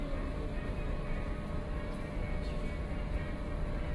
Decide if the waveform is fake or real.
real